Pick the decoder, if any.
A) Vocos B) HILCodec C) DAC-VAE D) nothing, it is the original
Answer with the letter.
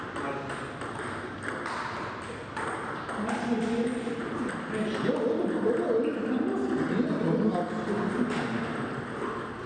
D